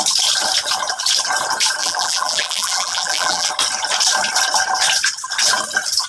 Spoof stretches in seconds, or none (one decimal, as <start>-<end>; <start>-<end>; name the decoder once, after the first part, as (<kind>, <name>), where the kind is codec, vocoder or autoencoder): 1.8-3.5 (vocoder, BigVGAN v2)